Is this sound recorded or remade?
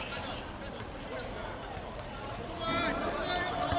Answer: remade